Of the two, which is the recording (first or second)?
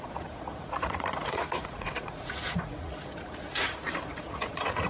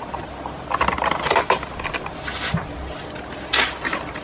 second